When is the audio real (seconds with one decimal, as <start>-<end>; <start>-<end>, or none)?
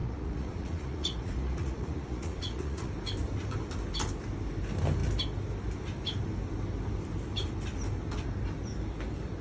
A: 2.9-9.4